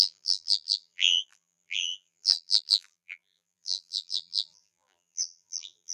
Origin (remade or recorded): remade